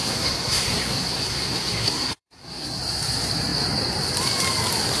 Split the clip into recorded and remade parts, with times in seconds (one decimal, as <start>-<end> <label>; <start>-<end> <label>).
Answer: 0.0-2.8 remade; 2.8-5.0 recorded